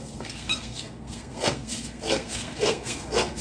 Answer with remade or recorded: remade